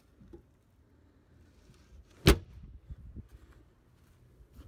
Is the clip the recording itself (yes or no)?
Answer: yes